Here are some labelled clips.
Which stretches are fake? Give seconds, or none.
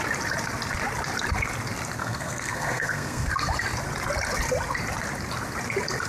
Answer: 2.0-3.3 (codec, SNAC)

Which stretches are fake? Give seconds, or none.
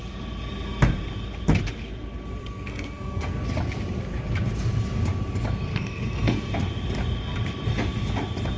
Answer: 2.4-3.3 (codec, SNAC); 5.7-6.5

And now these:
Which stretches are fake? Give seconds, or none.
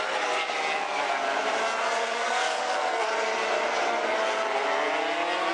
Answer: 2.0-3.1 (codec, SNAC)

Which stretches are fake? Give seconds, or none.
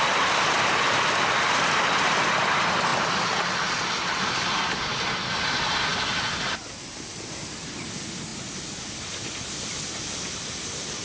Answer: none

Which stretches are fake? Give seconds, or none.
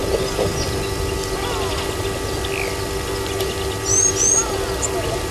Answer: none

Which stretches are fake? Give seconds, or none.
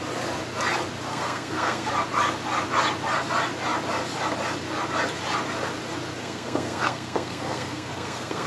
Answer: 1.1-1.9 (codec, SNAC); 6.2-8.5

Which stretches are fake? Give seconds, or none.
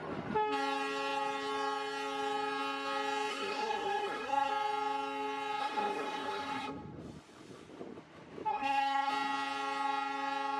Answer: 3.3-4.5 (codec, SNAC); 5.6-6.7; 8.5-9.1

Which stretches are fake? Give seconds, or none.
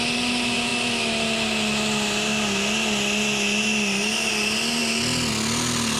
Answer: none